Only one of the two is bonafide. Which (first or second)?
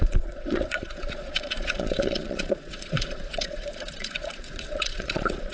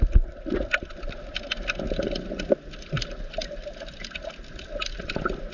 second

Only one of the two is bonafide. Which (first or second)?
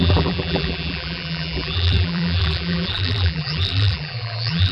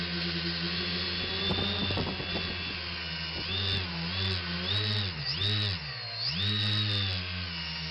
second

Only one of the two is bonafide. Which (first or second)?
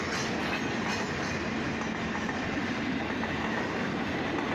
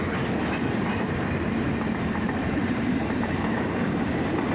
first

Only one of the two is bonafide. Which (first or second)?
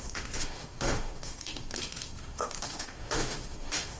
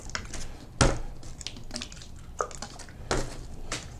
second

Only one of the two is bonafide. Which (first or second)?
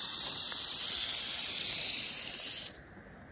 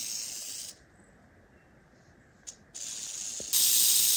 second